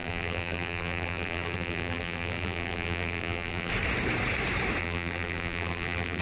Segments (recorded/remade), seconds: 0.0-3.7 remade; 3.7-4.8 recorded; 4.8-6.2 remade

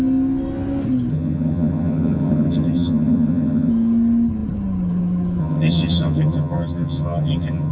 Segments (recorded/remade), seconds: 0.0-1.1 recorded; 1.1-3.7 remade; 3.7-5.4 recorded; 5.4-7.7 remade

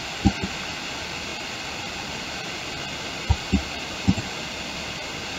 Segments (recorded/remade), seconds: 0.0-5.4 recorded